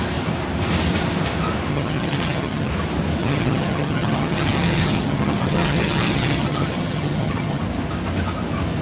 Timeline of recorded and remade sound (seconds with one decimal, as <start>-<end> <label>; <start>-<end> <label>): 0.0-1.7 recorded; 1.7-2.7 remade; 2.7-3.2 recorded; 3.2-7.6 remade; 7.6-8.8 recorded